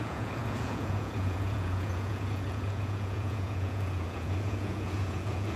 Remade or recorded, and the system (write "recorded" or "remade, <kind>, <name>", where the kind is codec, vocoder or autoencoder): remade, vocoder, Vocos